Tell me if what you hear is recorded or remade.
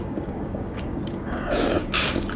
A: remade